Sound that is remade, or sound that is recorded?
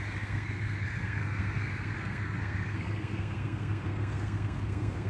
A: remade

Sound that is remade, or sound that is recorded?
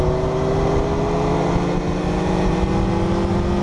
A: recorded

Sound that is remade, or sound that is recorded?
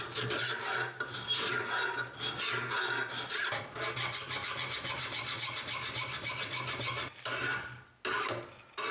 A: recorded